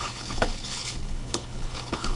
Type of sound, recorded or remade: remade